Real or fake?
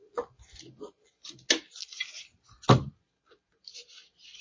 real